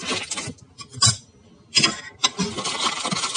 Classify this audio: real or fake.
real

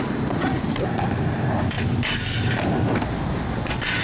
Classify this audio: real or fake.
real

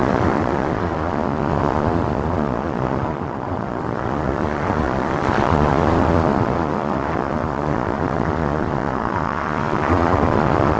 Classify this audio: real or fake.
fake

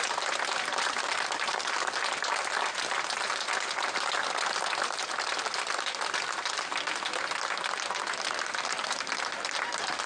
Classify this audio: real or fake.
real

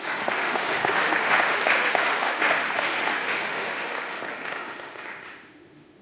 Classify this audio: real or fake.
fake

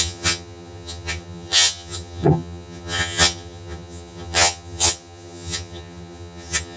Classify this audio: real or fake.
fake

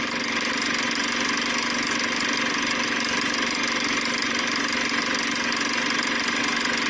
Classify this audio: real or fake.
real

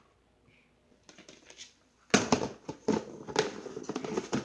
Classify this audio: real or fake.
real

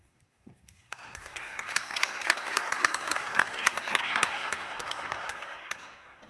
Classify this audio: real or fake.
fake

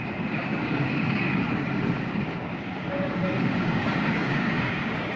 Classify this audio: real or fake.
fake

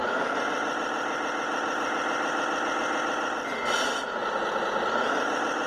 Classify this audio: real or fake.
real